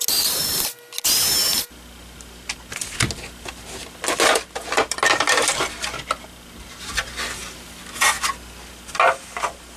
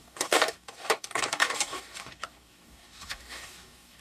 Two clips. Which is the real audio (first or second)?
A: first